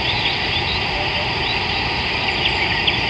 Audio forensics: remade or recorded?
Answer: recorded